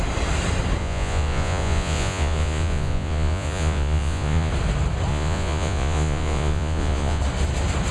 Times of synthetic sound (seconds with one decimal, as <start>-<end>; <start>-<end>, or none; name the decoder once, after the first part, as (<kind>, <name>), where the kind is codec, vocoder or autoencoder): 0.8-4.5 (vocoder, Vocos); 5.1-7.2